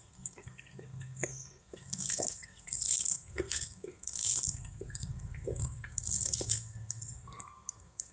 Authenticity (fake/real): fake